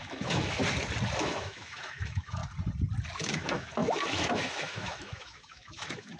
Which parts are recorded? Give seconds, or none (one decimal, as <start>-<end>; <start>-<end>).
0.6-1.2; 2.4-3.2